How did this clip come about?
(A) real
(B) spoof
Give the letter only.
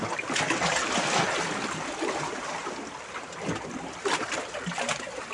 A